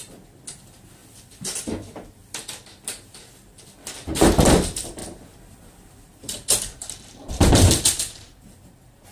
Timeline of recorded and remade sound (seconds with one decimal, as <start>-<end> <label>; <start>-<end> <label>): 0.0-1.0 recorded; 1.0-3.6 remade; 3.6-5.0 recorded; 5.0-9.1 remade